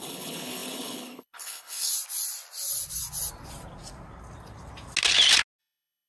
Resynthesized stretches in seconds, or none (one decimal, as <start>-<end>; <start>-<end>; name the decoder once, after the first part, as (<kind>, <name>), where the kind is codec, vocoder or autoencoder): 0.0-1.9 (codec, HILCodec); 5.6-6.1

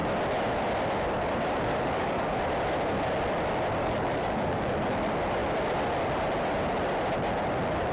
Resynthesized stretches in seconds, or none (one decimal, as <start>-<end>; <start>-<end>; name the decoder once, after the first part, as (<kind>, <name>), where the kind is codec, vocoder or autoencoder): 1.7-2.4 (codec, DAC); 3.8-4.7

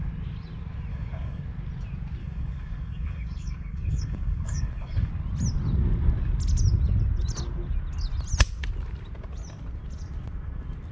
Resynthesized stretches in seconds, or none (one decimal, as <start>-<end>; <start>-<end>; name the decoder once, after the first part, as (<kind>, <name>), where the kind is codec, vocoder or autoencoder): 0.9-1.4 (codec, DAC); 2.2-5.1

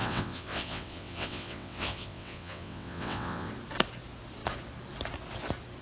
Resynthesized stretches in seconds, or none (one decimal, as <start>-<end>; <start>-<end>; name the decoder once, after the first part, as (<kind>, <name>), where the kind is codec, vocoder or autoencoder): 0.0-3.5 (vocoder, WaveNeXt)

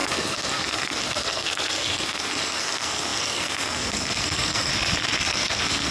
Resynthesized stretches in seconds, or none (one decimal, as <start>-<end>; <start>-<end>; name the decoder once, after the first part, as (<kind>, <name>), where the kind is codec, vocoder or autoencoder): 0.0-4.7 (codec, SNAC); 5.3-5.9